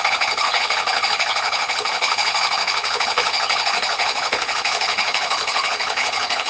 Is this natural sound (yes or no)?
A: no